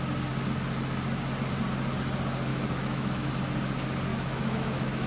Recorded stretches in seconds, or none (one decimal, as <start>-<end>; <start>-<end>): 0.0-2.5; 3.3-4.1